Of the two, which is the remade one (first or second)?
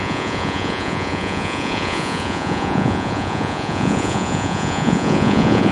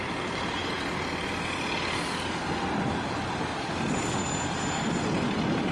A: first